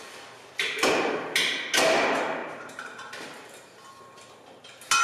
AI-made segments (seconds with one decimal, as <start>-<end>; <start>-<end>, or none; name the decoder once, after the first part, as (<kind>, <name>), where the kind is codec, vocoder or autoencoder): 2.4-3.1 (vocoder, BigVGAN v2)